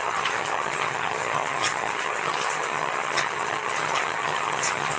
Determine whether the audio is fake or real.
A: fake